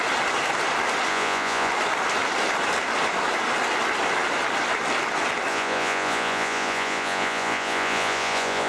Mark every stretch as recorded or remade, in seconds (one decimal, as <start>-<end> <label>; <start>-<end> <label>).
0.0-1.1 recorded; 1.1-1.7 remade; 1.7-5.5 recorded; 5.5-8.7 remade